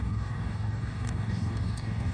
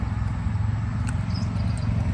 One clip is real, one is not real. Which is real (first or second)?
second